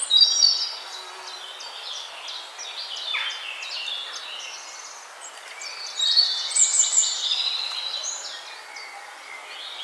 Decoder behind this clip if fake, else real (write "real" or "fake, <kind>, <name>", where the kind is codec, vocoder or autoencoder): real